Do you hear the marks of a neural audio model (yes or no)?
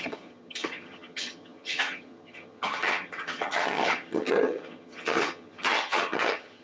yes